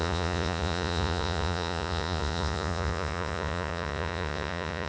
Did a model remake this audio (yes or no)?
yes